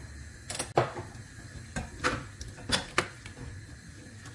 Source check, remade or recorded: recorded